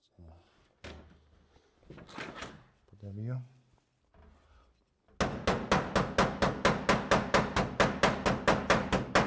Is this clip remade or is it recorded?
recorded